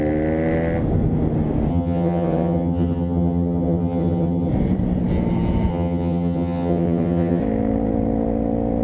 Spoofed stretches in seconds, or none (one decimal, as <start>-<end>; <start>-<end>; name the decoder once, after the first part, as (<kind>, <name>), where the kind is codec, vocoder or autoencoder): 1.7-4.5 (vocoder, HiFi-GAN); 5.7-7.4